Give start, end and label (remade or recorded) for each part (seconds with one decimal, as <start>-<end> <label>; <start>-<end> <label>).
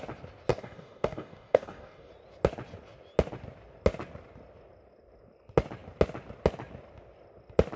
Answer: 0.0-0.5 recorded; 0.5-2.1 remade; 2.1-7.8 recorded